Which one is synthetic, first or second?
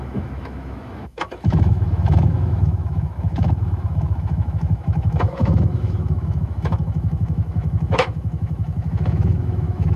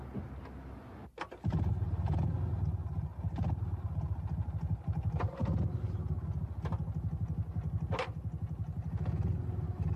first